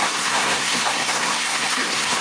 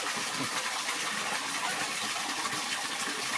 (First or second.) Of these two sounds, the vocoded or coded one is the first